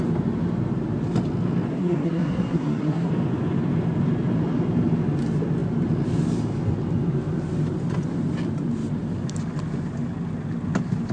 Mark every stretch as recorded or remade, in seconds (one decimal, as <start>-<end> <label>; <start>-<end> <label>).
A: 0.0-1.7 recorded; 1.7-3.1 remade; 3.1-11.1 recorded